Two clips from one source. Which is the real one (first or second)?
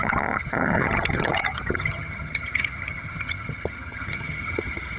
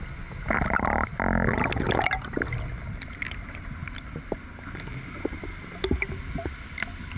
second